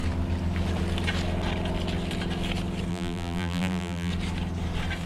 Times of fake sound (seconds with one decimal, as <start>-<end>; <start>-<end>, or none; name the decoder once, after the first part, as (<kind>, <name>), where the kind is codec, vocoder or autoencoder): 2.9-4.1 (vocoder, BigVGAN v2)